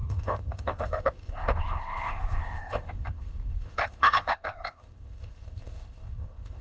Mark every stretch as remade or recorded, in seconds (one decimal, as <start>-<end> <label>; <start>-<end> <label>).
0.0-6.6 remade